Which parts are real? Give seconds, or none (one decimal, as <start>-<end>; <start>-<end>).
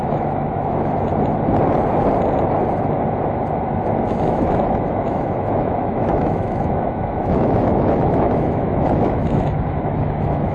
1.1-4.0